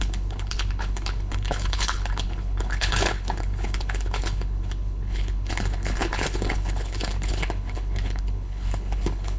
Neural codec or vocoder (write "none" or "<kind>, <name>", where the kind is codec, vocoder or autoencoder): codec, HILCodec